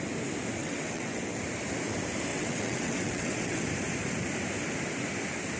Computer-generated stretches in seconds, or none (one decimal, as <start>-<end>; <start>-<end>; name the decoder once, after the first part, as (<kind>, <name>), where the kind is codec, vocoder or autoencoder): 0.6-1.2 (vocoder, WaveNeXt); 2.3-3.6